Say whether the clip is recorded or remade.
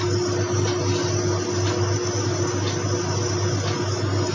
recorded